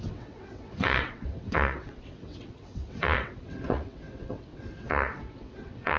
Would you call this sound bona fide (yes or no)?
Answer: no